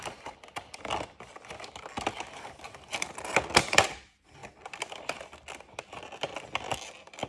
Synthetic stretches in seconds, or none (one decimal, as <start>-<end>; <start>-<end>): none